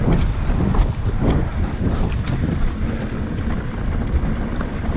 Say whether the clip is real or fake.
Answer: real